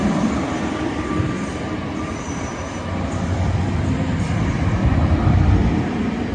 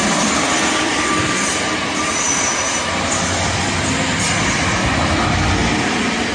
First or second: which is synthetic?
first